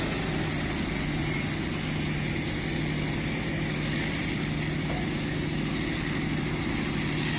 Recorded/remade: recorded